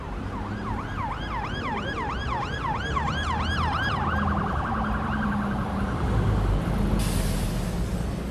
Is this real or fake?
real